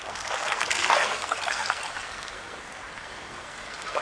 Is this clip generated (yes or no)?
yes